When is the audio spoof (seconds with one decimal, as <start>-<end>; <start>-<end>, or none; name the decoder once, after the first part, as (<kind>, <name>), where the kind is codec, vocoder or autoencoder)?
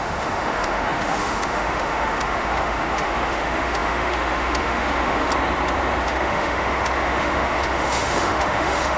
0.0-5.3 (autoencoder, DAC-VAE); 6.0-9.0